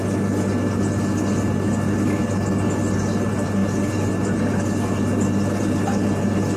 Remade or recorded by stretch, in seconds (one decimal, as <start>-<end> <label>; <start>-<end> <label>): 0.0-6.6 recorded